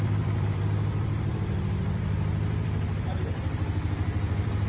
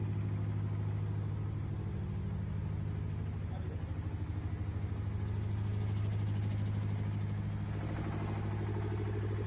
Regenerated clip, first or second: first